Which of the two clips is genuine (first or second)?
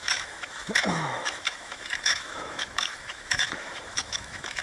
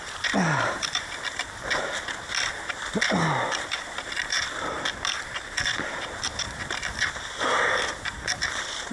second